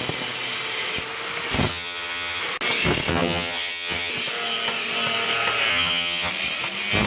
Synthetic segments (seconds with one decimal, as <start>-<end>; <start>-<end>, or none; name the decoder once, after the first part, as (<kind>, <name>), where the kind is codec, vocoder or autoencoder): 1.7-2.4 (vocoder, HiFi-GAN); 3.1-4.1; 5.7-6.3